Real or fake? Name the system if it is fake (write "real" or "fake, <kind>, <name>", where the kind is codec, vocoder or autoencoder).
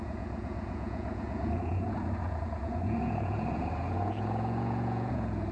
fake, vocoder, Vocos